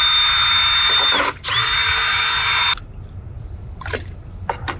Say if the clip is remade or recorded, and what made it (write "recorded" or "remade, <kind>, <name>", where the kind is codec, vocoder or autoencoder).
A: recorded